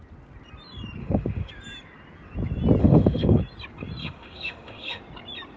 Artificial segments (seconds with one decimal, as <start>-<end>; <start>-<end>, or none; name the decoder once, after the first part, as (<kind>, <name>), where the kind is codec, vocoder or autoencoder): 1.0-1.5 (autoencoder, DAC-VAE); 2.8-3.4; 4.0-5.0